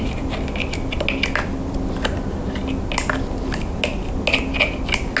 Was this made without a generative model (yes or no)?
yes